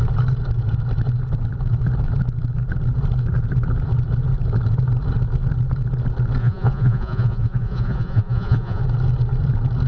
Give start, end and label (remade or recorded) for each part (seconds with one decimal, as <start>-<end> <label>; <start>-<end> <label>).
0.0-6.4 recorded; 6.4-8.8 remade; 8.8-9.9 recorded